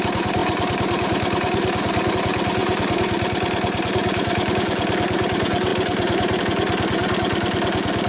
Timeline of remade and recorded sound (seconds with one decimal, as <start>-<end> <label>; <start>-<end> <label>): 0.0-0.4 recorded; 0.4-2.1 remade; 2.1-2.6 recorded; 2.6-4.5 remade; 4.5-5.7 recorded; 5.7-6.4 remade; 6.4-8.1 recorded